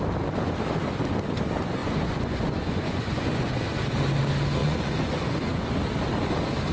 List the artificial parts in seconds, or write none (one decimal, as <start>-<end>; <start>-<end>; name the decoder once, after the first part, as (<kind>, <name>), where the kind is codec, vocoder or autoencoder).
1.8-3.6 (vocoder, Vocos); 4.6-5.8